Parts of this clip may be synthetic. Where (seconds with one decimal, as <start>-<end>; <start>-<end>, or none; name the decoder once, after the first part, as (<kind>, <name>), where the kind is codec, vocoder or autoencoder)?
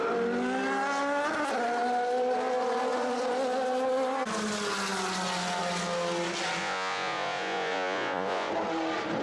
6.6-8.5 (vocoder, Vocos)